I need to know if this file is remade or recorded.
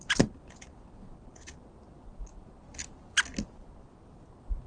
recorded